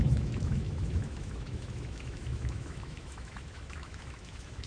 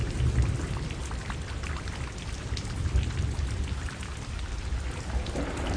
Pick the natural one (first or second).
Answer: second